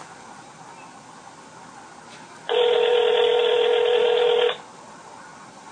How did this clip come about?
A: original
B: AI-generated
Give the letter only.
A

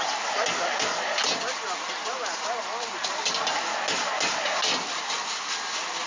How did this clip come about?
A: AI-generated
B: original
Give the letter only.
B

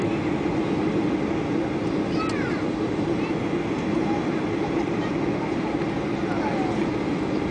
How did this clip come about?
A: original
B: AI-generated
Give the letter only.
A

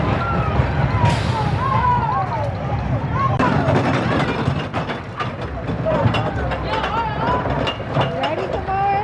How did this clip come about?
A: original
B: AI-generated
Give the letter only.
A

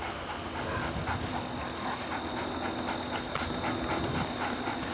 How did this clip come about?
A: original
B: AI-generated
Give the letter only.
A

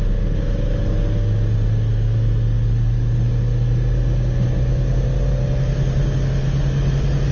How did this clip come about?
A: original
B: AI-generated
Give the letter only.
A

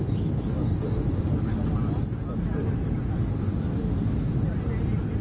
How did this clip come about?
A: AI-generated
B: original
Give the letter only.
B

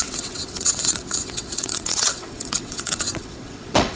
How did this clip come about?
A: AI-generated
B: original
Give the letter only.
A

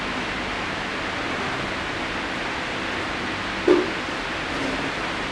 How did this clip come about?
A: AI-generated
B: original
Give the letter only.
B